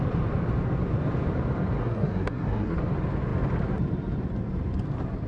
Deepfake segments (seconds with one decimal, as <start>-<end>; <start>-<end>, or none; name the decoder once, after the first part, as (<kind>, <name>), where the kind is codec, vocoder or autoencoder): 1.8-2.8 (codec, SNAC)